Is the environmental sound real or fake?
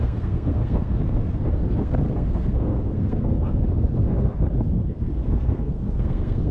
fake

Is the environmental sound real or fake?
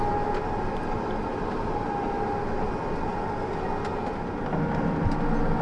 real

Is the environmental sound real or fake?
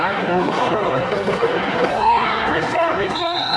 fake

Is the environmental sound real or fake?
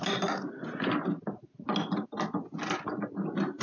real